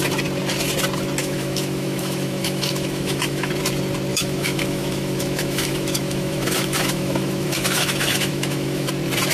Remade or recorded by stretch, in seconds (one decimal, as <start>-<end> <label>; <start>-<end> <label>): 0.0-1.2 recorded; 1.2-3.5 remade; 3.5-4.1 recorded; 4.1-8.9 remade; 8.9-9.3 recorded